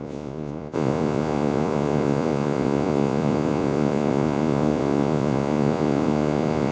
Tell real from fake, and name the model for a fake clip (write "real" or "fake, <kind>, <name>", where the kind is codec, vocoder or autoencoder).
fake, vocoder, Vocos